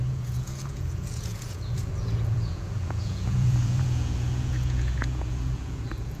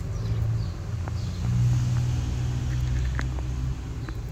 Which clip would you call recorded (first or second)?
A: second